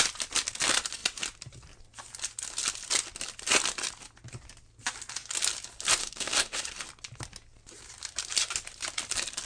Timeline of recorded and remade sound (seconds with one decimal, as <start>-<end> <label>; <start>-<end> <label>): 0.0-6.0 recorded; 6.0-6.6 remade; 6.6-9.5 recorded